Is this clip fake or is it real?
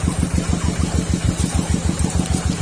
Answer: real